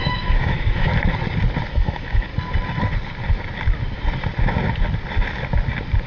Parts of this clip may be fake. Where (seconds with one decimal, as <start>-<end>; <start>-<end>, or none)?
0.0-0.9; 1.7-2.3